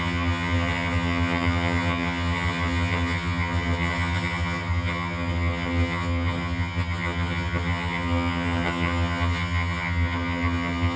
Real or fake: fake